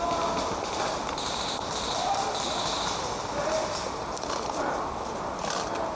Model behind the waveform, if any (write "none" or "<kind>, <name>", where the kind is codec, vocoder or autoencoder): none